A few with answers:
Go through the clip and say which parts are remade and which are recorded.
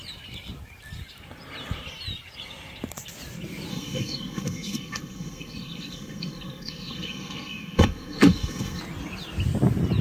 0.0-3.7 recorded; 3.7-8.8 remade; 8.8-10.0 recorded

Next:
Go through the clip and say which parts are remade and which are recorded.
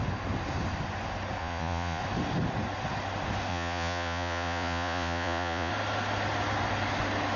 0.0-1.4 recorded; 1.4-2.0 remade; 2.0-3.5 recorded; 3.5-5.7 remade; 5.7-7.4 recorded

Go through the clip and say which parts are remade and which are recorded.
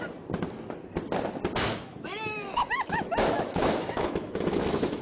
0.0-1.7 recorded; 1.7-5.0 remade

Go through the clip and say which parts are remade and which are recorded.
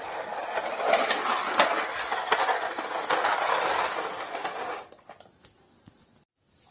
0.0-6.7 recorded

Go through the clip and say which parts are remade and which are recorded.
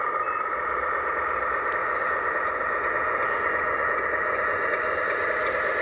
0.0-1.8 recorded; 1.8-5.3 remade; 5.3-5.8 recorded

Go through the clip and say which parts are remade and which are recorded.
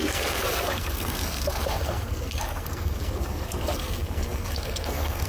0.0-5.3 remade